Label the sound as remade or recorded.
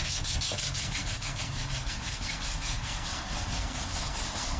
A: remade